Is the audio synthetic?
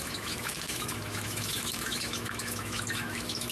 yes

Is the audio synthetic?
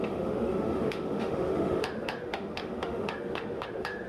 yes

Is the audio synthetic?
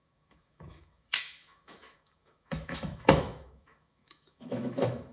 yes